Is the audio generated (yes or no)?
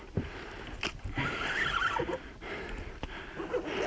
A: no